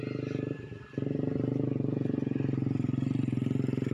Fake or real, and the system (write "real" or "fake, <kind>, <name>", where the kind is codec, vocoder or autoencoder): real